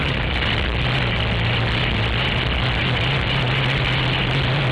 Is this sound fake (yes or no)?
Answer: no